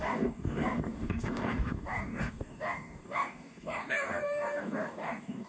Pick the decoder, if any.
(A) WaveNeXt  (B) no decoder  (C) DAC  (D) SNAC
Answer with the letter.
C